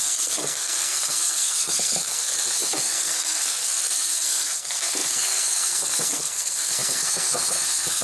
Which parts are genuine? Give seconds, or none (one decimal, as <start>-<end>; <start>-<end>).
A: none